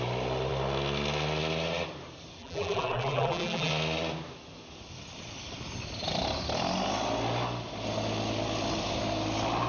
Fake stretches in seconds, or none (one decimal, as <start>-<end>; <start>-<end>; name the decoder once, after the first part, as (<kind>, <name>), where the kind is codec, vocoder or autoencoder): 2.4-3.7 (vocoder, BigVGAN v2)